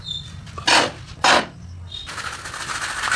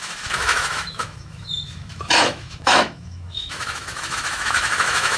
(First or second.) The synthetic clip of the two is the second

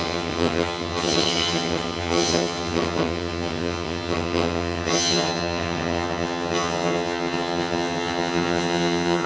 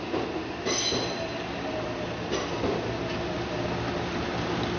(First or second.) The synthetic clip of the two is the first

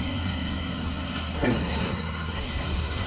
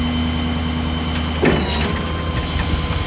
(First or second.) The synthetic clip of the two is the first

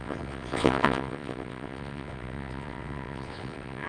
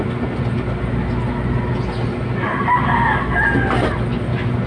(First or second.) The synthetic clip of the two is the first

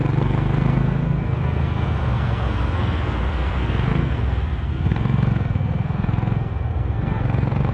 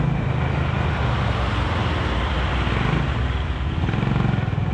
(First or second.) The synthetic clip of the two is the first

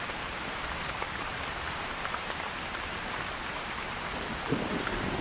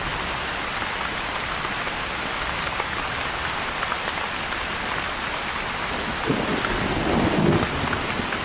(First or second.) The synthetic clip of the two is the first